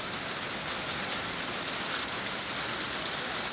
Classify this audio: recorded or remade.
remade